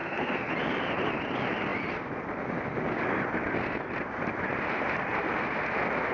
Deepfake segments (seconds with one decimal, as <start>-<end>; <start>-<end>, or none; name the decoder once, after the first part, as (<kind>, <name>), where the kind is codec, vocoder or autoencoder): 0.0-0.5 (codec, SNAC)